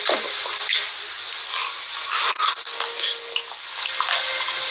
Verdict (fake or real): real